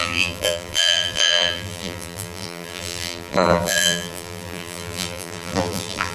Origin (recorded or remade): remade